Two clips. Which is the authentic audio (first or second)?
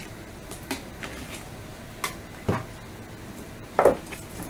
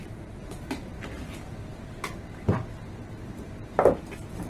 first